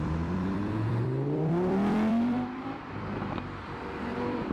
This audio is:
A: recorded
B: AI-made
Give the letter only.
B